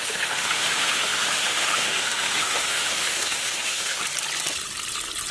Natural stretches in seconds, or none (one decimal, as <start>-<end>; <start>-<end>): 4.0-5.3